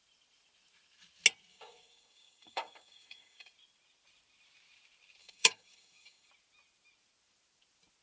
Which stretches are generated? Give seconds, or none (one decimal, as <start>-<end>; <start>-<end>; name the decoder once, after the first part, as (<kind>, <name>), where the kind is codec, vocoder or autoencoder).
1.5-3.5 (codec, DAC); 5.2-6.3